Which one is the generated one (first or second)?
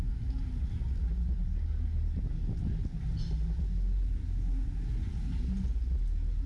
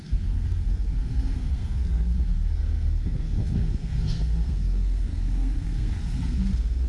second